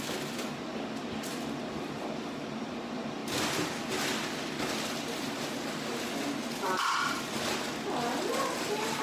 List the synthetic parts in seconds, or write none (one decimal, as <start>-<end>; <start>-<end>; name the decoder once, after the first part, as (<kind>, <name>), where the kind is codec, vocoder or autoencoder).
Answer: none